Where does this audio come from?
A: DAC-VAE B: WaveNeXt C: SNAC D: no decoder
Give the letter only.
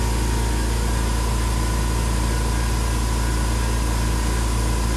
D